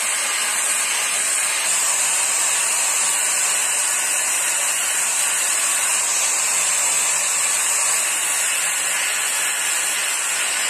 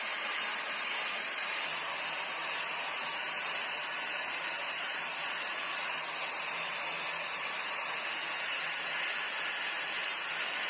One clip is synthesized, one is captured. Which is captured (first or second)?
first